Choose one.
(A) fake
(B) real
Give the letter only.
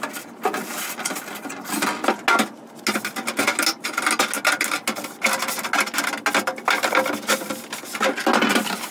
B